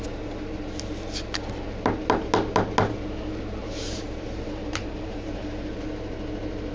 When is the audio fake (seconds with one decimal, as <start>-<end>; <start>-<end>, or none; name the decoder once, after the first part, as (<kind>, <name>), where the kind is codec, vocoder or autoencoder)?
3.6-5.7 (vocoder, BigVGAN v2)